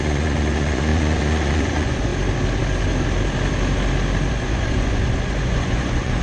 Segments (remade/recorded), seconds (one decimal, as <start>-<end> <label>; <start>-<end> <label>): 0.0-2.1 remade; 2.1-4.3 recorded; 4.3-6.2 remade